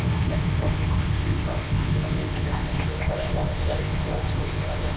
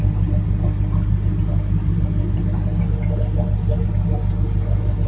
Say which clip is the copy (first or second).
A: first